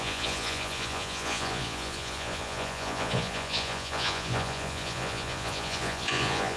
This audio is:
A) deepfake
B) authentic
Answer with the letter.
A